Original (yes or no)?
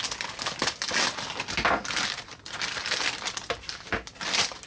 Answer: yes